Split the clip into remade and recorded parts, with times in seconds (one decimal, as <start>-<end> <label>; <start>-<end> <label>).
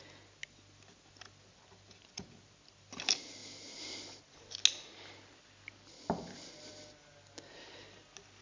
0.0-8.4 recorded